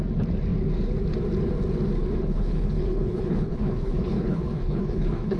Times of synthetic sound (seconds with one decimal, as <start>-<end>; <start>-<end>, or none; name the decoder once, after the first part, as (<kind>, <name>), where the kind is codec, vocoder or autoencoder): 2.0-5.4 (codec, HILCodec)